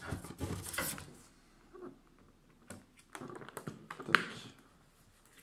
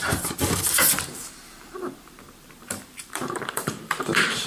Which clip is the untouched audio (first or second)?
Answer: first